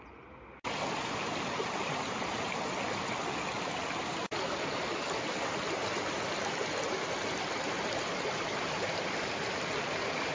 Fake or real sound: real